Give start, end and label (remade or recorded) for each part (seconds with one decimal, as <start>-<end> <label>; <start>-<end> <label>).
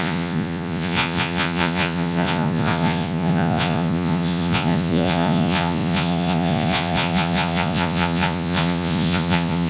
0.0-9.7 remade